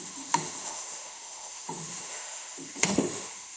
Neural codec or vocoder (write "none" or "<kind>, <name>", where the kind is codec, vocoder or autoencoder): autoencoder, DAC-VAE